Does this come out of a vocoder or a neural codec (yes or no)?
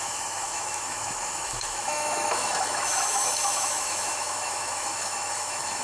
yes